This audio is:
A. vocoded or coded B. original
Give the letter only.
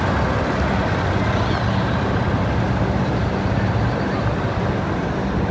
B